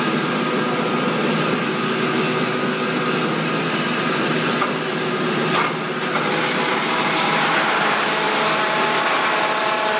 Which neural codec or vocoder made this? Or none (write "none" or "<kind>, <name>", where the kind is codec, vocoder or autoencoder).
none